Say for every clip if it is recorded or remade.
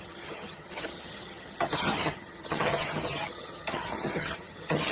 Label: remade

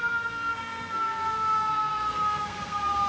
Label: remade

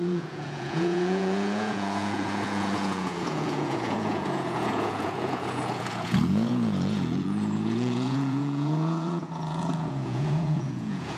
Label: remade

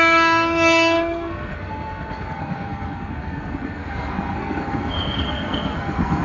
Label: remade